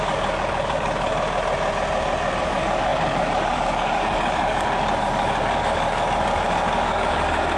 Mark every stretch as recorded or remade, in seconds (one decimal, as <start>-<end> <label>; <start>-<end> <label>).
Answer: 0.0-1.1 remade; 1.1-2.4 recorded; 2.4-7.6 remade